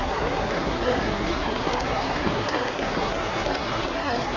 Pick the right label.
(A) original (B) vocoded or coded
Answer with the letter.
B